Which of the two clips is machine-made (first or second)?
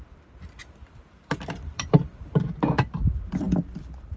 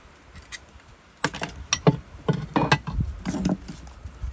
first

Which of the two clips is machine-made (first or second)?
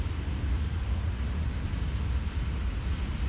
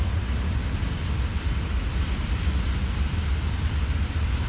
second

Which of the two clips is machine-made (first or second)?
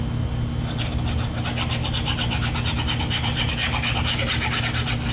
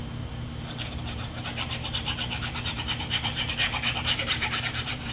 second